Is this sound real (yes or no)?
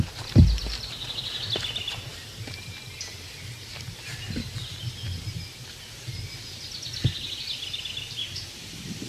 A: yes